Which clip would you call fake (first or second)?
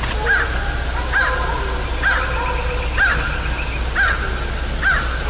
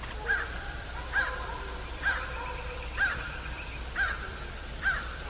second